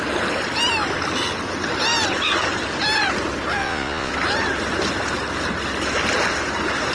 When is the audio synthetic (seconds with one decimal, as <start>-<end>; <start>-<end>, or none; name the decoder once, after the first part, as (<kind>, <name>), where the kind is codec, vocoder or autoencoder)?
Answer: 3.6-4.1 (vocoder, Vocos)